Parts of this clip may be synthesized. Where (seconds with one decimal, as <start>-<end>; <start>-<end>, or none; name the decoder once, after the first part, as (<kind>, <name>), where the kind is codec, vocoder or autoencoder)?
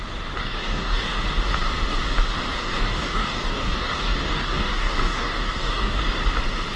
0.4-1.2 (codec, DAC); 2.5-6.0